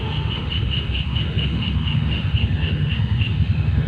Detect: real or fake fake